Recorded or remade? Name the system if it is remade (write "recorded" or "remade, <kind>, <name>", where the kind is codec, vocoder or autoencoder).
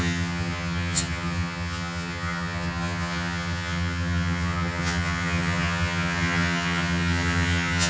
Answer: remade, vocoder, HiFi-GAN